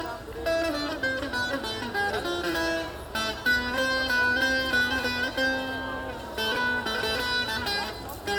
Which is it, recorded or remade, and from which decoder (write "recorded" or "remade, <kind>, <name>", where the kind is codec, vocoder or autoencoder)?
recorded